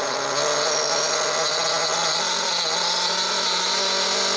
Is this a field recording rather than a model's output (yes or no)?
yes